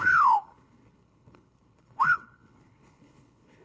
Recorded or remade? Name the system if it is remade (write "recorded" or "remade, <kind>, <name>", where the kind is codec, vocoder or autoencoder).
remade, codec, HILCodec